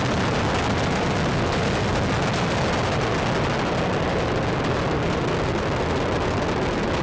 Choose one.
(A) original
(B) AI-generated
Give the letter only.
A